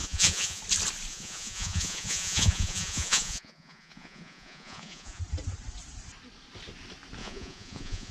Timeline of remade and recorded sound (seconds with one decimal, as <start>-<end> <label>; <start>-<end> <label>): 0.0-0.6 remade; 0.6-1.1 recorded; 1.1-5.2 remade; 5.2-7.2 recorded; 7.2-8.1 remade